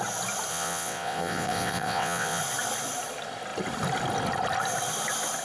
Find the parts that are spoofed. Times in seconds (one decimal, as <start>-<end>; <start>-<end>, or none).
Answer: 0.5-2.4

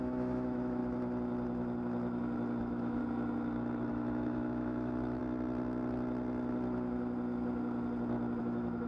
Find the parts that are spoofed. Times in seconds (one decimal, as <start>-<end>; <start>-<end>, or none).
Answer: 0.0-0.8; 2.6-3.0; 3.9-5.2; 8.4-8.9

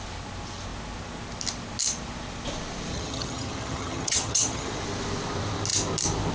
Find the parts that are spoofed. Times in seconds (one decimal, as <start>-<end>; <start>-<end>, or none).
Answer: 2.9-4.7

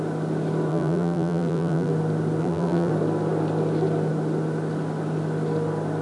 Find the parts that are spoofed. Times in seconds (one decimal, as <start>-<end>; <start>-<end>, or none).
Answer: 0.7-1.9; 2.4-2.9

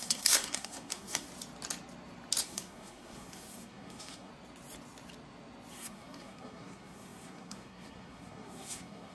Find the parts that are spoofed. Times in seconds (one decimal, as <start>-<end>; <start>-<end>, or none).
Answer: 0.0-1.3; 2.4-4.3; 5.7-9.1